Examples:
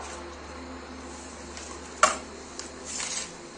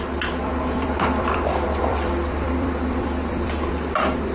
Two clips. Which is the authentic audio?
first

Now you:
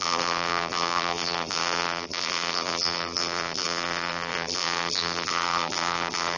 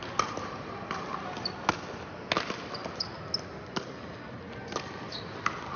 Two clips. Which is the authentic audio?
second